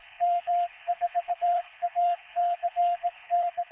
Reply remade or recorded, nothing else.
remade